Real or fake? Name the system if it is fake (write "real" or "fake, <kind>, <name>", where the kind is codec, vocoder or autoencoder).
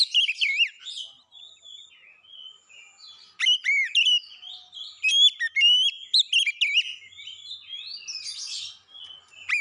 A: real